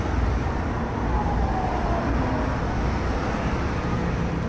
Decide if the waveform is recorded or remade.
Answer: recorded